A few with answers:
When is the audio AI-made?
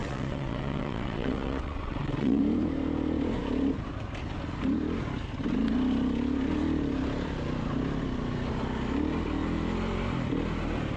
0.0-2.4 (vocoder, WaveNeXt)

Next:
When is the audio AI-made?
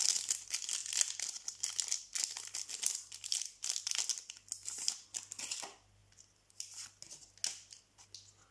none